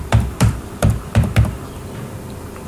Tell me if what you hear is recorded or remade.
remade